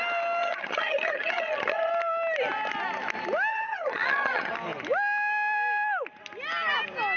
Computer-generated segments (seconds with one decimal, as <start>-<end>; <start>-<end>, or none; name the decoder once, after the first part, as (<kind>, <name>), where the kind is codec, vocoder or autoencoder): 0.4-1.9 (vocoder, HiFi-GAN); 3.5-4.5